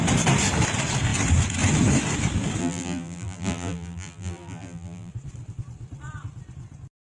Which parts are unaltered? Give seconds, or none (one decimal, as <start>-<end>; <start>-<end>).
0.0-2.6; 5.1-7.1